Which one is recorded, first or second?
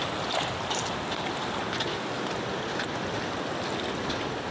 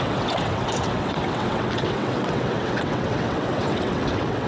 first